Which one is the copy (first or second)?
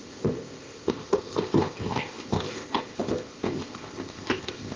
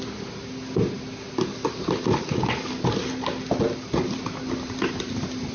first